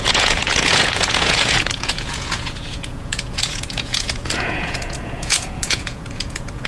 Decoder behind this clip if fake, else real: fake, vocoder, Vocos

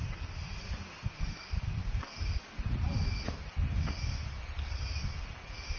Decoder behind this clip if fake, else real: real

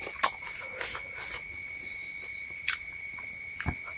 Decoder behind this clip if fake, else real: real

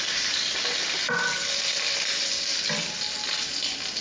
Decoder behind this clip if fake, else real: real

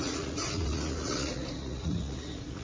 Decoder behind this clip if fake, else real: fake, vocoder, Vocos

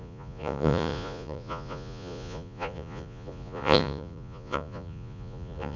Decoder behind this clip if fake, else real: fake, vocoder, Vocos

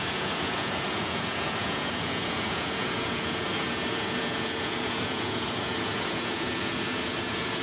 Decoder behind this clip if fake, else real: fake, vocoder, Vocos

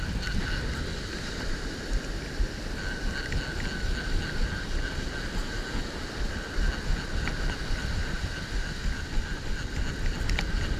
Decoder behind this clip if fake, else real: real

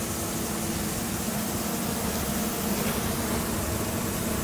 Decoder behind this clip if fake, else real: real